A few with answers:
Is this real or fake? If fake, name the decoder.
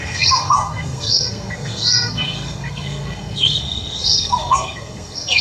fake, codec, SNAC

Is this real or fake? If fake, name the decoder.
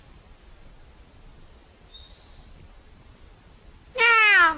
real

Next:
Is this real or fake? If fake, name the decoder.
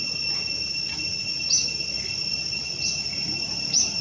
real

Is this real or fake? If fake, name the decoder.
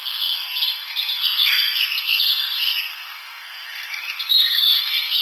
fake, codec, SNAC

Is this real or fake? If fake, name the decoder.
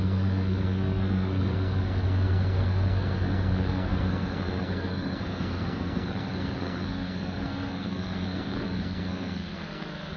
fake, codec, SNAC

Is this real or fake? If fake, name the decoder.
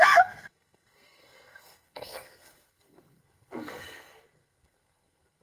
fake, codec, SNAC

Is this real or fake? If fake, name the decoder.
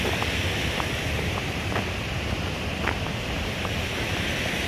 real